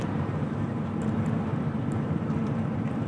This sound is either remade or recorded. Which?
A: remade